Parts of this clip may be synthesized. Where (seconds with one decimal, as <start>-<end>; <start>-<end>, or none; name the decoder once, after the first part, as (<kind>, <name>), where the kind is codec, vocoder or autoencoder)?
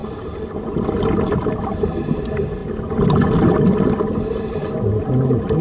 none